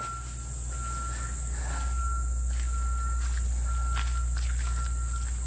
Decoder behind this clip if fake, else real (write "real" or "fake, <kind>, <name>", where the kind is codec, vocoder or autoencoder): real